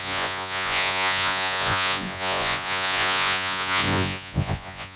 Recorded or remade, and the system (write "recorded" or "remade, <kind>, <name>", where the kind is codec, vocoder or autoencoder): remade, vocoder, Vocos